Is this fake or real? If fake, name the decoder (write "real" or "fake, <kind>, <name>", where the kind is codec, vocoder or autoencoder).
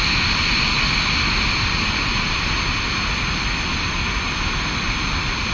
real